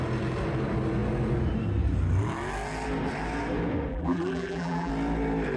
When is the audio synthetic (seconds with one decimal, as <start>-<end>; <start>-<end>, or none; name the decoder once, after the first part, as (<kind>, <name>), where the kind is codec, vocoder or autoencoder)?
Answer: 3.9-4.9 (vocoder, BigVGAN v2)